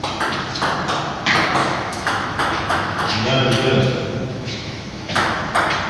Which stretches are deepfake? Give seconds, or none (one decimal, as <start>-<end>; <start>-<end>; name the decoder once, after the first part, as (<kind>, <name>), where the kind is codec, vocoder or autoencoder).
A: 1.6-3.4 (autoencoder, DAC-VAE); 4.3-5.4